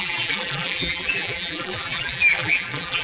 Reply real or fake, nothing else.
fake